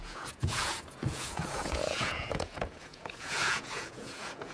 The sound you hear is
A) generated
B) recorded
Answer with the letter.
A